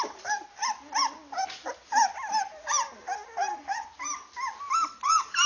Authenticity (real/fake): real